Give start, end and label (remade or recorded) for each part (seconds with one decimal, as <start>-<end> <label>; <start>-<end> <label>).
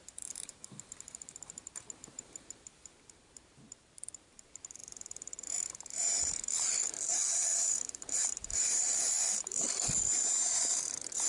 0.0-11.3 remade